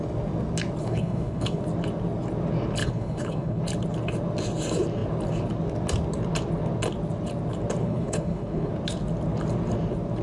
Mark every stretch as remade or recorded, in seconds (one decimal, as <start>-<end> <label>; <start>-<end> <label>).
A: 0.0-0.8 recorded; 0.8-1.6 remade; 1.6-2.8 recorded; 2.8-3.6 remade; 3.6-7.8 recorded; 7.8-8.7 remade; 8.7-10.2 recorded